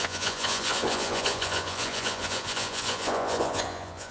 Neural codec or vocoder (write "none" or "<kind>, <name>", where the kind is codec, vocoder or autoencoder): vocoder, Vocos